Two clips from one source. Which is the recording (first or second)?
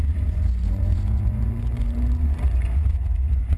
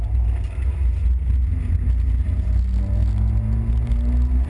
second